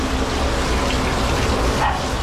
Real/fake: real